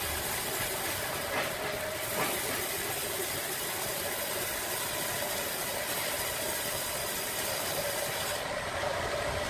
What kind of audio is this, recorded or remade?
remade